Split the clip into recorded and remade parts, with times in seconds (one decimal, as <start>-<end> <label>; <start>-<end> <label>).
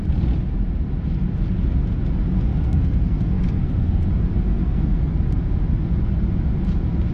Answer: 0.0-2.5 recorded; 2.5-4.1 remade; 4.1-4.5 recorded; 4.5-5.1 remade; 5.1-7.1 recorded